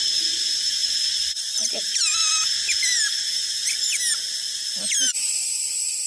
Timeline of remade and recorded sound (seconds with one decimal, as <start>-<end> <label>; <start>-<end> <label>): 0.0-3.6 remade; 3.6-5.1 recorded; 5.1-6.1 remade